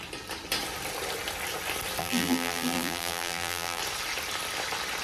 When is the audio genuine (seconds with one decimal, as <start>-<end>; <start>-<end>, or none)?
0.0-2.0; 3.8-5.0